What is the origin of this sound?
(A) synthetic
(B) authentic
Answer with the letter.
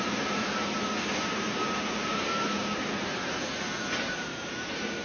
B